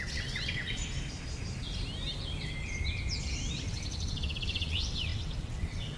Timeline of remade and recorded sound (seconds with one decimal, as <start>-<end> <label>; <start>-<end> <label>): 0.0-0.8 remade; 0.8-3.7 recorded; 3.7-6.0 remade